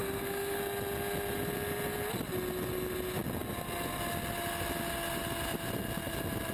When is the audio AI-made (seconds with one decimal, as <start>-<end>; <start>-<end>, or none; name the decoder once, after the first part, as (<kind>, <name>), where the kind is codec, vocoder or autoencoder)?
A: 0.0-0.6 (codec, SNAC)